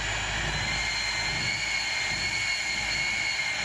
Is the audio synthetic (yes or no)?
no